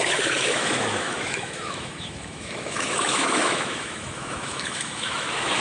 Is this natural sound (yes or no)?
no